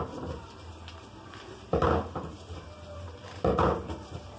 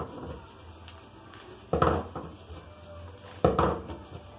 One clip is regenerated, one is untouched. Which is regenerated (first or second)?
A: first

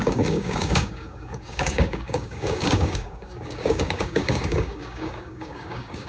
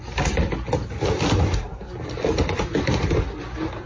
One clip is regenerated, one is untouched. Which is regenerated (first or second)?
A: first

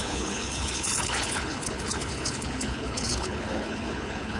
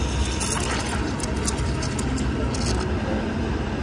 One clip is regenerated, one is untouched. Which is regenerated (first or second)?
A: first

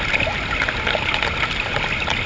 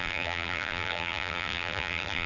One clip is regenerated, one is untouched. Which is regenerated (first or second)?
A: second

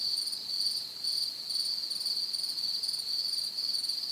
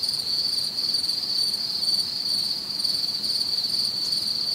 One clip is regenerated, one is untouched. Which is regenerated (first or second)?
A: second